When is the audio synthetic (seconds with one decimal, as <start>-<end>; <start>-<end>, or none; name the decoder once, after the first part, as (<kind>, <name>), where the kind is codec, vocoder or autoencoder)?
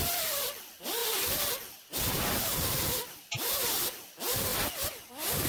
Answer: none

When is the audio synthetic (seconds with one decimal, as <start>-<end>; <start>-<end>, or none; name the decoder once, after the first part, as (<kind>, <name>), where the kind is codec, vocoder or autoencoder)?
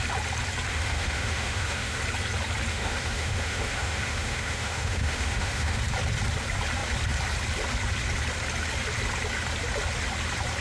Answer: 0.7-2.0 (autoencoder, DAC-VAE); 2.7-5.8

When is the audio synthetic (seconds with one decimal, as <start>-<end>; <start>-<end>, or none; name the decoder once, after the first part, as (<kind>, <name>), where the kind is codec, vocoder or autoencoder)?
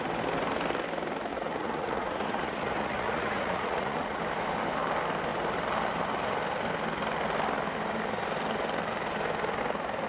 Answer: 1.3-4.2 (vocoder, Vocos)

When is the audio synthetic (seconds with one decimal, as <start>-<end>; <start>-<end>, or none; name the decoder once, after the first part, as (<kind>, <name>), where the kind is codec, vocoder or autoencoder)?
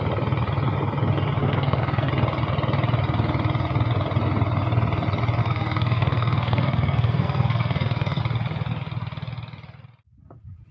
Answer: 1.4-2.1 (codec, SNAC); 5.4-8.2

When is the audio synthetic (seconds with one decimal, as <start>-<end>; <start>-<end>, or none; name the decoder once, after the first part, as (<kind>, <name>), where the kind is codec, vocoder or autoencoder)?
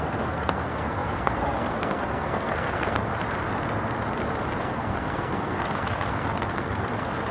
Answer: 0.0-3.1 (codec, SNAC); 4.6-7.3